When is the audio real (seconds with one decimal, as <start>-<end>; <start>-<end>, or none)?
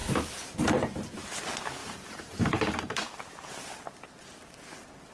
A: 1.0-1.8; 3.5-5.1